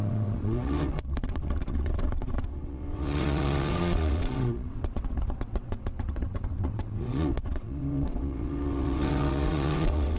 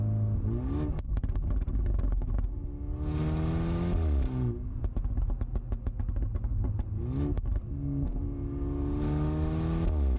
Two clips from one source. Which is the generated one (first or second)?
first